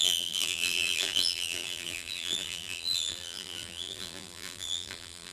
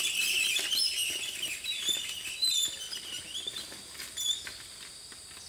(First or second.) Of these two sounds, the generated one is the first